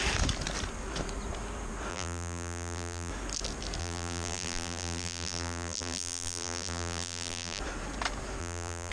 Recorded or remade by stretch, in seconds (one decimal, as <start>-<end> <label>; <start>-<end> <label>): 0.0-1.9 recorded; 1.9-3.1 remade; 3.1-3.8 recorded; 3.8-7.6 remade; 7.6-8.4 recorded; 8.4-8.9 remade